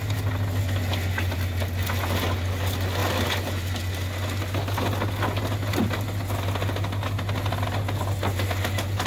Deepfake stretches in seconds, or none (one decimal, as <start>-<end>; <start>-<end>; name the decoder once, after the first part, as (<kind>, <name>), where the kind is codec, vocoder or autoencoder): 3.0-3.6 (vocoder, BigVGAN v2)